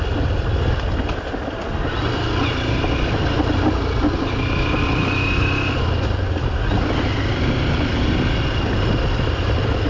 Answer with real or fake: real